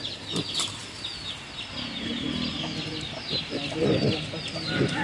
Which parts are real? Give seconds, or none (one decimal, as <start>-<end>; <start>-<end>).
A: none